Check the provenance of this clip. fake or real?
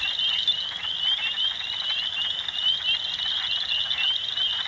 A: real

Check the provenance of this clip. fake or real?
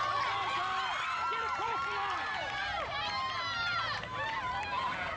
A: real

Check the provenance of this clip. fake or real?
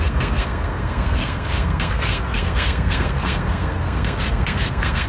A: fake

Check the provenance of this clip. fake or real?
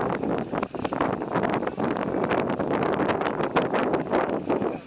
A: real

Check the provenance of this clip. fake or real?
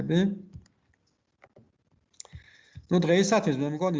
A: real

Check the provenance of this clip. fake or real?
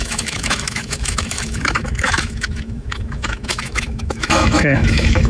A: fake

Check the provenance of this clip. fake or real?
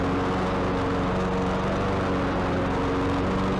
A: real